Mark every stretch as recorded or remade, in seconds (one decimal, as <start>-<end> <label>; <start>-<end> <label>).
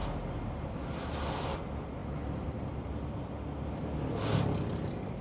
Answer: 0.0-5.2 recorded